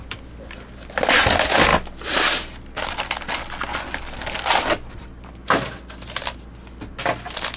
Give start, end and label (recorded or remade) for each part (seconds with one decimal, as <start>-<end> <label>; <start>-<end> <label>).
0.0-7.6 recorded